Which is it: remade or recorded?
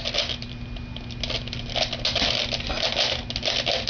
recorded